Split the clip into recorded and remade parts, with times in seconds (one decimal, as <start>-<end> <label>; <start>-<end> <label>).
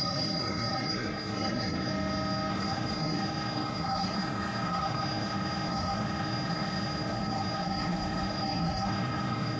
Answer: 0.0-1.9 remade; 1.9-2.5 recorded; 2.5-9.6 remade